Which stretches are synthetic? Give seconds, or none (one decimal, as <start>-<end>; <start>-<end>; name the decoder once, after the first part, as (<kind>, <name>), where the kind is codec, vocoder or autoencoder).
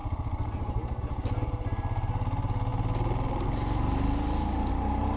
none